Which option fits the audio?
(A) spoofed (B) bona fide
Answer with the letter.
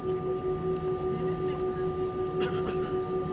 B